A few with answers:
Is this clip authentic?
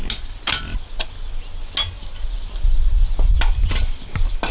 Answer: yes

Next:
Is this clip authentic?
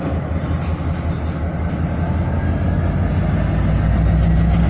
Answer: yes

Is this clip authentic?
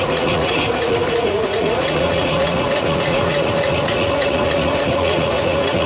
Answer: no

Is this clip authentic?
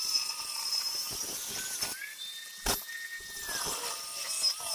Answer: yes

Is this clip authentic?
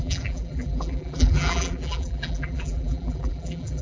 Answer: no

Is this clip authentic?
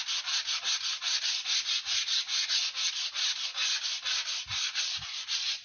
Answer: yes